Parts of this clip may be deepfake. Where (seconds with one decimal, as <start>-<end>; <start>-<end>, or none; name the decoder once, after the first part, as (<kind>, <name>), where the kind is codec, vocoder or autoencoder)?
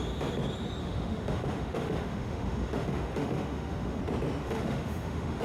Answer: 0.8-4.0 (autoencoder, DAC-VAE); 4.4-5.4